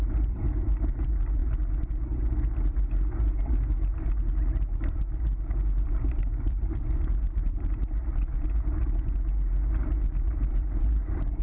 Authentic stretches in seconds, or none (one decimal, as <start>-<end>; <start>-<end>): 1.4-6.1; 8.3-10.1